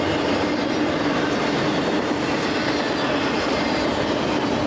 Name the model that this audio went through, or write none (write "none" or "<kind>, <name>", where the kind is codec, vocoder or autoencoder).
none